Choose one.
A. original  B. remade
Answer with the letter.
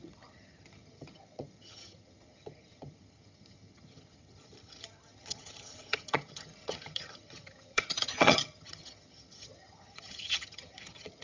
B